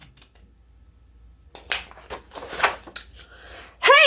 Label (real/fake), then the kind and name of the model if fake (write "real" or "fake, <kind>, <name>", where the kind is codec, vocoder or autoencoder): real